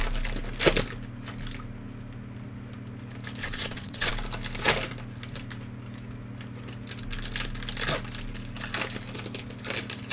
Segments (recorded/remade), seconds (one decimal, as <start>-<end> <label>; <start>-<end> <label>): 0.0-3.4 recorded; 3.4-4.1 remade; 4.1-10.1 recorded